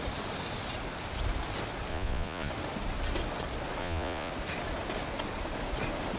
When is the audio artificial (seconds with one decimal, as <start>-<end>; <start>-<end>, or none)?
1.9-2.5; 3.8-4.3